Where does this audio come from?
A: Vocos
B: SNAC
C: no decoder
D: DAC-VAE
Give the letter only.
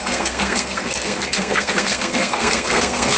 B